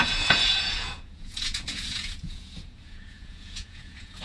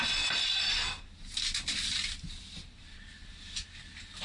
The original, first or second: second